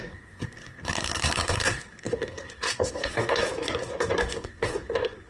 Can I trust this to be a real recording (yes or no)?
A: no